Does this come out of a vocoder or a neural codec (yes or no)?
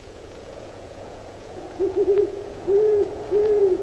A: yes